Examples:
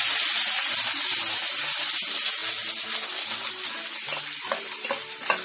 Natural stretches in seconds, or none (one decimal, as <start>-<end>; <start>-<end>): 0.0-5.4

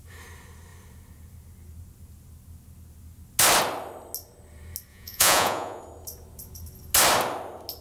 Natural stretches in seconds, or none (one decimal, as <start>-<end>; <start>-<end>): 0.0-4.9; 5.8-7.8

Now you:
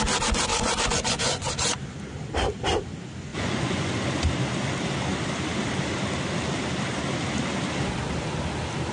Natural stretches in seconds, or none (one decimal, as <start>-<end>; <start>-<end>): 0.0-0.5; 1.5-3.3; 3.9-8.9

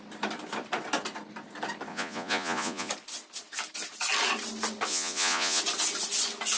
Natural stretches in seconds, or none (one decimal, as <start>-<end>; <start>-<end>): 0.0-1.9; 2.9-4.9; 5.6-6.6

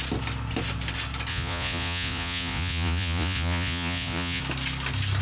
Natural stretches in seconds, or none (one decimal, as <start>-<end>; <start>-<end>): 0.0-1.3; 4.4-5.2